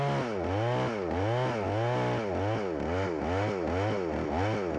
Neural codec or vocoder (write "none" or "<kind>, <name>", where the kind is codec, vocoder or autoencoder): none